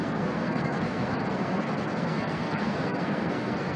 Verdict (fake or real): fake